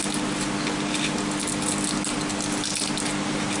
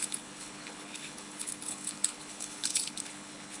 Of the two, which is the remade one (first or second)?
second